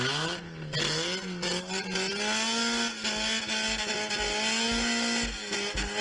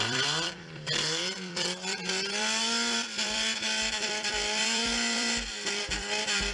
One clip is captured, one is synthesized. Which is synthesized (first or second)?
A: second